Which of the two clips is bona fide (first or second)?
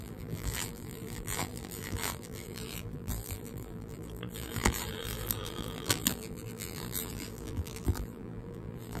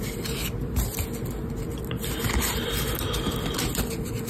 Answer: second